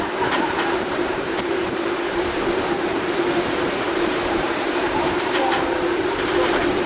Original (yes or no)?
no